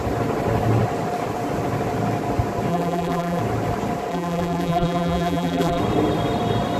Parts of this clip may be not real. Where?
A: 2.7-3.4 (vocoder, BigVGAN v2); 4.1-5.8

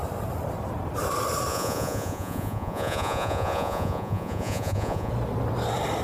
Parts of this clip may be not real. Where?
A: 1.5-5.1 (vocoder, Vocos)